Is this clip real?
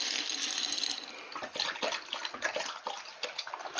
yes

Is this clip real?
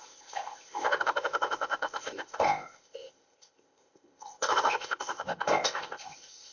no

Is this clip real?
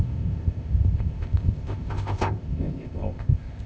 no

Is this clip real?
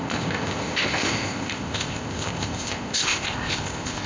no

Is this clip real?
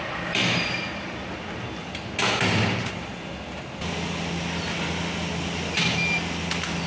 yes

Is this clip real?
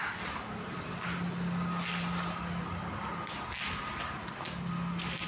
yes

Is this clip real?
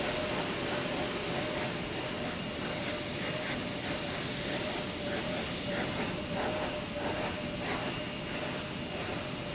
yes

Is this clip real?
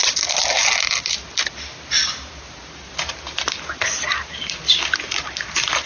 yes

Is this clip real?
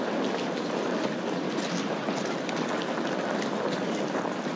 yes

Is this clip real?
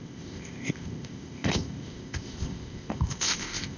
no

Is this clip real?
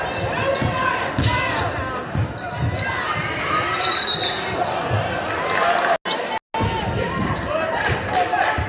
yes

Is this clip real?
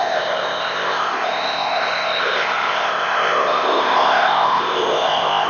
no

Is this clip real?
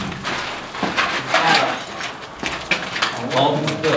yes